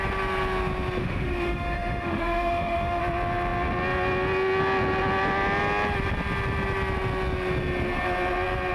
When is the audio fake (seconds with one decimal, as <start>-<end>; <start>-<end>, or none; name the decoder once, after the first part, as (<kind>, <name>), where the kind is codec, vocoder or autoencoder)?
1.0-3.0 (autoencoder, DAC-VAE)

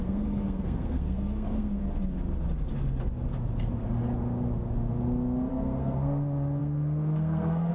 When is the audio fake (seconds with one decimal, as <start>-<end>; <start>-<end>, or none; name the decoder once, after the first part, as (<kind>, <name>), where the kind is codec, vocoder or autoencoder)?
0.0-1.8 (codec, SNAC); 5.5-7.7

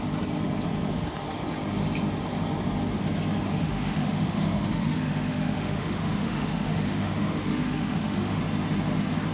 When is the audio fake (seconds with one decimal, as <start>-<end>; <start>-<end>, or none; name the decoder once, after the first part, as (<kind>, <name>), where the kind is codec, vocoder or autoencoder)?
3.5-8.4 (autoencoder, DAC-VAE)

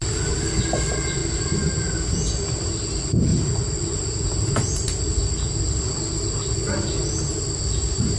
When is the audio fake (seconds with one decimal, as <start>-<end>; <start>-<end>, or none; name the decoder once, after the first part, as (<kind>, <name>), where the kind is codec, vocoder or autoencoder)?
1.2-1.7 (vocoder, BigVGAN v2); 3.3-5.5

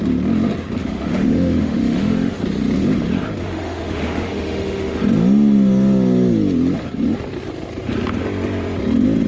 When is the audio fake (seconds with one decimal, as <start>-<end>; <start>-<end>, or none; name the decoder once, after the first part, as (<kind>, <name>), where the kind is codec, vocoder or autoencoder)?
0.8-2.4 (autoencoder, DAC-VAE); 3.4-5.0